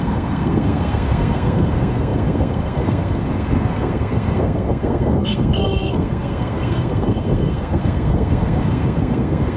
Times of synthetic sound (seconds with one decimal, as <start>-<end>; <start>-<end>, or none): 0.0-9.6